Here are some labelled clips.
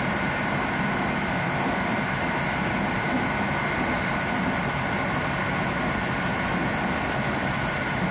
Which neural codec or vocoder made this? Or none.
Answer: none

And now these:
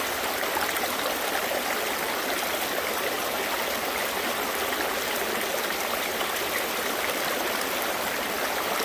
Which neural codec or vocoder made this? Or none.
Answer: none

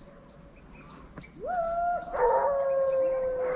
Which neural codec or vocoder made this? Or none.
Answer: none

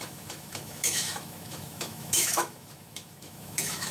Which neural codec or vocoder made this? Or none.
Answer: autoencoder, DAC-VAE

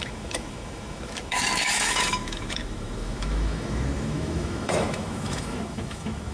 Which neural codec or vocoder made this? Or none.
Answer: autoencoder, DAC-VAE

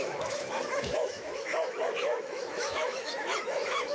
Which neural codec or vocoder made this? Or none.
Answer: autoencoder, DAC-VAE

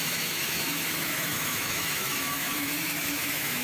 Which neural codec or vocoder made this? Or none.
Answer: autoencoder, DAC-VAE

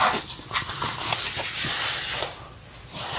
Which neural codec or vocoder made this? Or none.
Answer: none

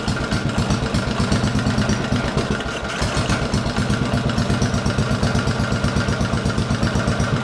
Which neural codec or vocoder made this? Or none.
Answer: none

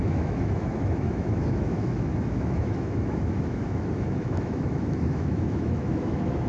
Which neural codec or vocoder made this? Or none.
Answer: autoencoder, DAC-VAE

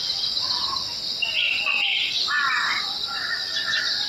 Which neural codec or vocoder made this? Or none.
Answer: none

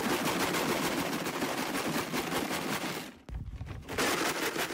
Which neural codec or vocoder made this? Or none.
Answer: none